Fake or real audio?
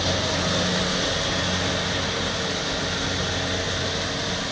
real